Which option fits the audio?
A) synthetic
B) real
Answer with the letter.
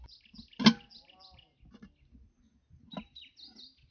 B